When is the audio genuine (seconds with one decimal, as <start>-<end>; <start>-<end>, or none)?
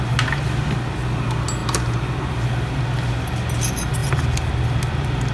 0.0-5.3